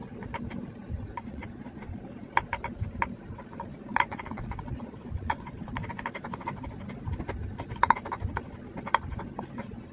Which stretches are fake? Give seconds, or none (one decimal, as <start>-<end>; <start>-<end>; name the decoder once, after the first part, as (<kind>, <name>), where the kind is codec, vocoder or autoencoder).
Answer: 1.1-1.9 (vocoder, Vocos); 3.9-5.9